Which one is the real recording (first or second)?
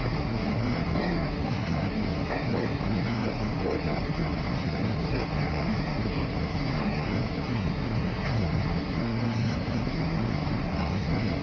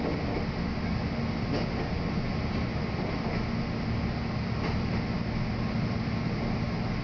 second